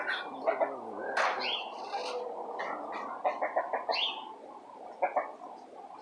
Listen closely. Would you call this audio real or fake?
real